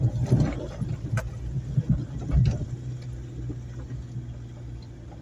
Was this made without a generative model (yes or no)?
yes